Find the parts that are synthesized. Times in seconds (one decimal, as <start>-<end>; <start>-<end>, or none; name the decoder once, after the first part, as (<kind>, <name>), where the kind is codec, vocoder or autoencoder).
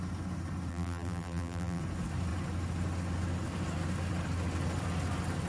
0.7-1.8 (vocoder, BigVGAN v2)